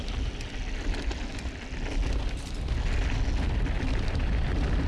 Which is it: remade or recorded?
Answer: recorded